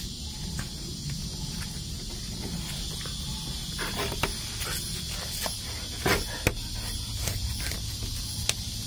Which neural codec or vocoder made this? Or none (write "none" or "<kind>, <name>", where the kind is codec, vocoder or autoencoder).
none